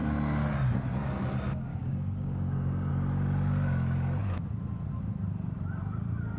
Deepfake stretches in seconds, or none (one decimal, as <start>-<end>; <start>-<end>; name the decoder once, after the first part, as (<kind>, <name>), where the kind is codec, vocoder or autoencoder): 1.7-2.9 (codec, DAC)